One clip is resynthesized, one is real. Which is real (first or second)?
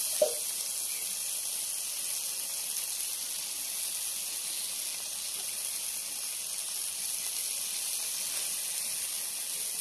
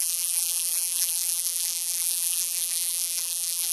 first